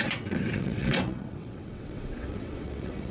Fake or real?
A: fake